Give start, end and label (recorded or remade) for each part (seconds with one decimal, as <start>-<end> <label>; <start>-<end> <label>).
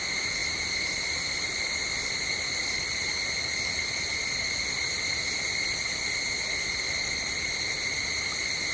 0.0-8.7 recorded